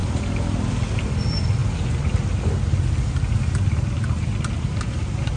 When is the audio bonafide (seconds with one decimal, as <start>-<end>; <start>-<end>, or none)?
0.0-5.4